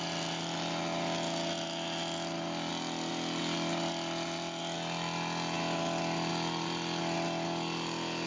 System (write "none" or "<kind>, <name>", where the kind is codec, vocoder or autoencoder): none